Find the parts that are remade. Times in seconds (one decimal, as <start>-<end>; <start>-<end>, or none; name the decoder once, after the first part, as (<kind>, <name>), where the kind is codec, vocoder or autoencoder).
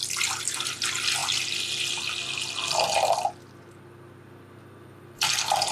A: none